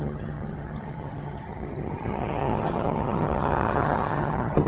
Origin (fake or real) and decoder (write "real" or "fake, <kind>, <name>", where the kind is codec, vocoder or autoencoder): fake, vocoder, HiFi-GAN